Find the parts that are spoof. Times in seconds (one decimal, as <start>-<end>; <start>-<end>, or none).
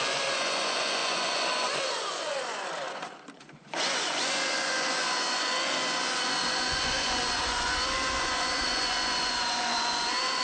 0.0-10.4